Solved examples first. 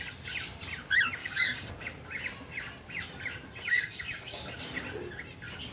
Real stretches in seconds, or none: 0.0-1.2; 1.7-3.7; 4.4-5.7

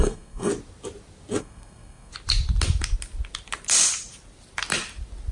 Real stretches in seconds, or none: 0.5-1.4; 2.1-5.3

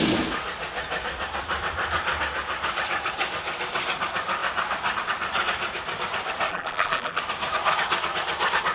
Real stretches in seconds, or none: 0.0-6.5; 7.2-8.7

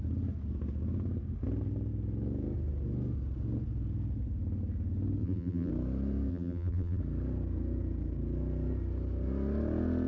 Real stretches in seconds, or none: 0.0-5.2; 5.7-6.3; 7.0-10.1

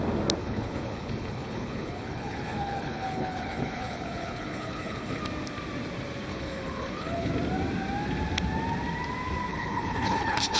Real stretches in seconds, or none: 0.0-0.4; 5.2-6.3; 7.3-9.5

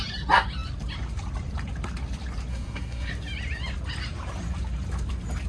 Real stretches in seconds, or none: 0.0-2.5; 3.1-5.5